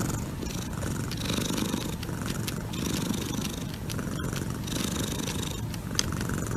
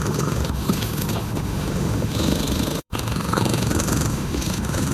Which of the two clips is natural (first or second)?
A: first